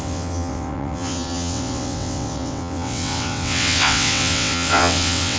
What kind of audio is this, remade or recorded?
remade